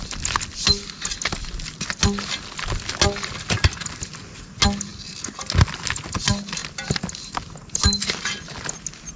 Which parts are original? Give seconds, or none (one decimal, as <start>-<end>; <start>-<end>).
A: 0.0-9.2